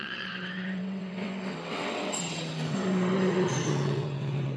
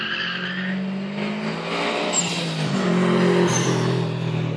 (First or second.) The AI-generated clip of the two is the first